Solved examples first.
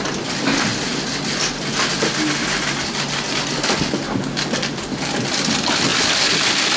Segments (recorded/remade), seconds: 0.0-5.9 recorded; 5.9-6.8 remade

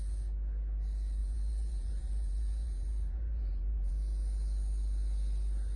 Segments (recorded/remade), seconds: 0.0-1.2 recorded; 1.2-3.9 remade; 3.9-5.8 recorded

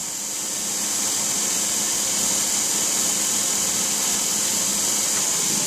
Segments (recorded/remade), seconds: 0.0-5.7 recorded

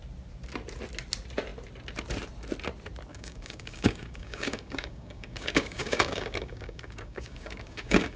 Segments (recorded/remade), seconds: 0.0-3.1 recorded; 3.1-8.2 remade

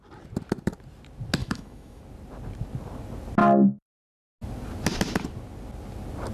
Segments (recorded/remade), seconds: 0.0-1.4 recorded; 1.4-2.0 remade; 2.0-3.4 recorded; 3.4-4.1 remade; 4.1-6.3 recorded